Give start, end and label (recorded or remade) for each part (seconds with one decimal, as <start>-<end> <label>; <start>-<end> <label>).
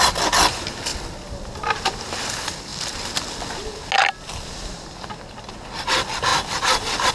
0.0-7.1 recorded